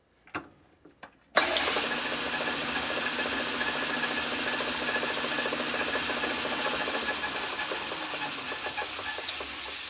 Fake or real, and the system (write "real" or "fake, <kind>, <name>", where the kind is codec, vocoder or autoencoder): real